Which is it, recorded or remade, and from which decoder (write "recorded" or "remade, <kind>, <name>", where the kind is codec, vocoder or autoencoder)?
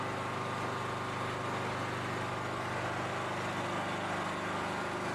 recorded